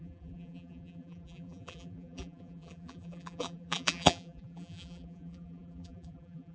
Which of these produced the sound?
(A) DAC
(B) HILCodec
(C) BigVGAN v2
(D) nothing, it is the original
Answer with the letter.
C